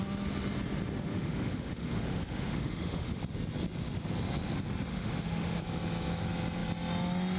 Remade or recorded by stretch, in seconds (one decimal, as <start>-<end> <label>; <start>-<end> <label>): 0.0-1.1 recorded; 1.1-3.2 remade; 3.2-4.9 recorded; 4.9-5.6 remade; 5.6-7.4 recorded